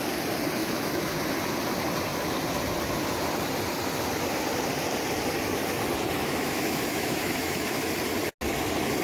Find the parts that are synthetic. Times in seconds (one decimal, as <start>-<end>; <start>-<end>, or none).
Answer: 0.6-1.2; 6.2-7.9